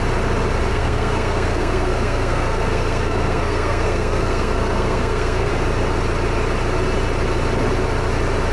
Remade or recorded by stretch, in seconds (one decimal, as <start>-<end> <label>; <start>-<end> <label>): 0.0-0.7 recorded; 0.7-5.5 remade; 5.5-8.5 recorded